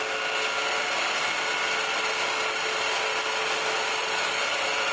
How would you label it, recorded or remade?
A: recorded